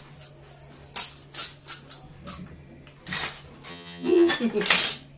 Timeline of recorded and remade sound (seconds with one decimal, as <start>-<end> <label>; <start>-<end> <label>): 0.0-3.7 recorded; 3.7-4.3 remade; 4.3-5.2 recorded